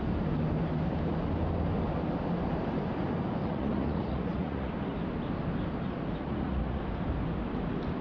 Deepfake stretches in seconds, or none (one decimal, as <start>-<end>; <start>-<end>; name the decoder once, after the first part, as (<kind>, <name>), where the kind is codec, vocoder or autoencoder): 3.4-4.7 (vocoder, Vocos); 6.2-6.8